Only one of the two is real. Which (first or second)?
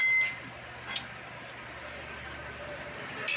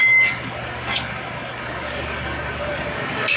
first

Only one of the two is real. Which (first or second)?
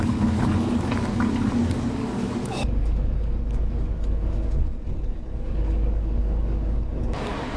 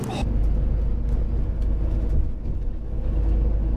second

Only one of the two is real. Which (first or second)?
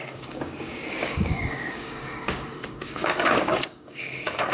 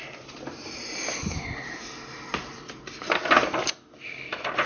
second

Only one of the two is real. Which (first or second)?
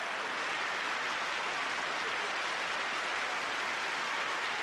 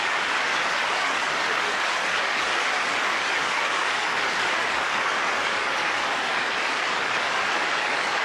first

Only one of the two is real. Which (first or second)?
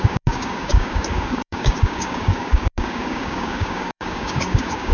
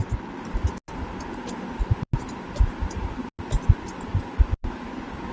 second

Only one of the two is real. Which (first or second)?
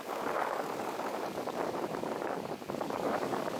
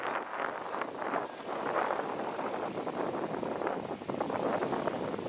second